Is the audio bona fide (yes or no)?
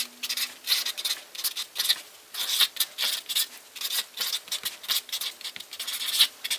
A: yes